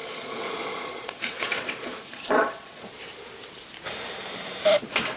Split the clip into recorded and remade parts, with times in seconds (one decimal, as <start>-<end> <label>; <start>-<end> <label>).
0.0-2.9 remade; 2.9-5.2 recorded